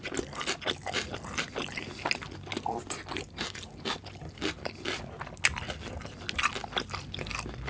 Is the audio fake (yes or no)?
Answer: no